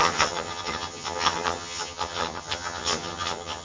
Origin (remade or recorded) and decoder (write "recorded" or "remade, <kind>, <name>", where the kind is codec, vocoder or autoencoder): remade, vocoder, HiFi-GAN